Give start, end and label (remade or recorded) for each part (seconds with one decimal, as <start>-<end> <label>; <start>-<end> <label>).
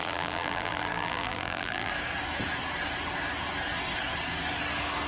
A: 0.0-1.9 remade; 1.9-5.1 recorded